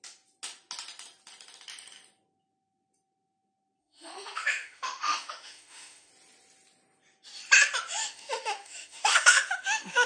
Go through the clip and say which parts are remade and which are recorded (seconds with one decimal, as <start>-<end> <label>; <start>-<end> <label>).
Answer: 0.0-3.8 recorded; 3.8-6.1 remade; 6.1-8.0 recorded; 8.0-10.1 remade